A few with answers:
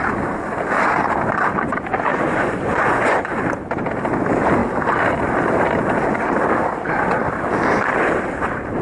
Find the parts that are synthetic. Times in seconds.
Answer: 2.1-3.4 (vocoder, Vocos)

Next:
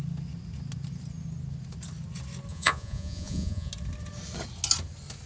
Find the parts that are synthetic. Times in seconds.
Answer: 2.5-3.7 (vocoder, Vocos)

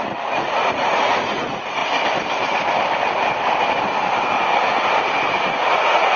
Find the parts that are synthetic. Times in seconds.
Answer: 0.0-1.8 (vocoder, Vocos); 5.4-6.2

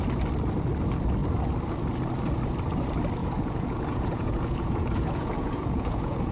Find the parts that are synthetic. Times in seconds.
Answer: 3.2-6.3 (vocoder, Vocos)

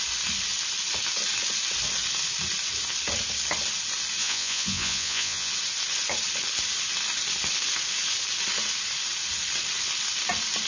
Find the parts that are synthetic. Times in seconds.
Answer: 4.2-5.5 (vocoder, Vocos)

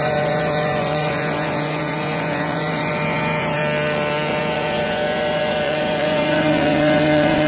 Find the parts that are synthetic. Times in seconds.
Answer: 0.0-3.6 (vocoder, Vocos); 4.3-7.5

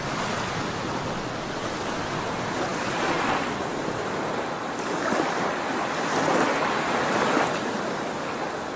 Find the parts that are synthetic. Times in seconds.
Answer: none